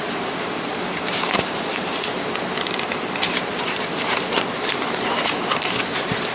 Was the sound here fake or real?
fake